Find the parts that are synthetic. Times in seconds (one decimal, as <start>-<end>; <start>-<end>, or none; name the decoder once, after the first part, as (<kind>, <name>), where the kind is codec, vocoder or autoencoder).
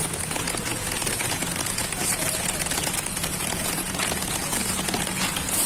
0.0-5.7 (vocoder, Vocos)